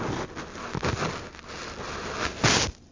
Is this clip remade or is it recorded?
recorded